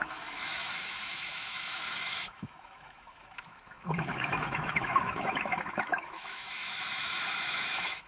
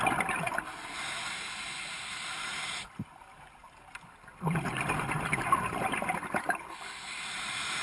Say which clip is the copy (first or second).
first